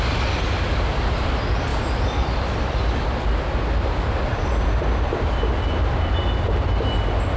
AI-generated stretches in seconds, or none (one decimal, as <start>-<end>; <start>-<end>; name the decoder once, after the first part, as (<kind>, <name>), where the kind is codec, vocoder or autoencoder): none